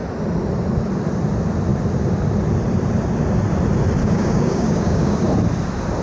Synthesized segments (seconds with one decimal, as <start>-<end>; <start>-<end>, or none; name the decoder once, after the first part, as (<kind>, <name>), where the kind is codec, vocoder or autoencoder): 4.0-5.3 (codec, DAC)